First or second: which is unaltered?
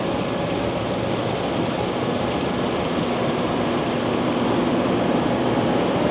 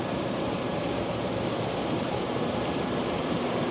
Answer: first